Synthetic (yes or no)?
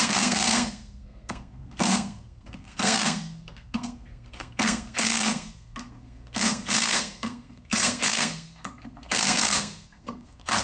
yes